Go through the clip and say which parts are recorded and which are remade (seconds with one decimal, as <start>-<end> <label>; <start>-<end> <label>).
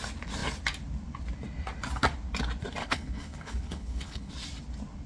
0.0-2.8 recorded; 2.8-4.3 remade; 4.3-5.1 recorded